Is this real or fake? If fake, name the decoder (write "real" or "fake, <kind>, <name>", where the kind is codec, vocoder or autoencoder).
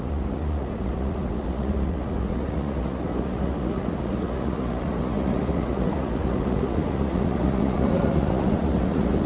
fake, vocoder, Vocos